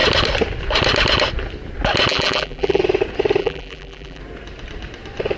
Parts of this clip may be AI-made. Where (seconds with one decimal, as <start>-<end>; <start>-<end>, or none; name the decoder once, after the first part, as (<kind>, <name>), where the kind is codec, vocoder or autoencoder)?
2.1-2.8 (vocoder, BigVGAN v2); 3.4-4.2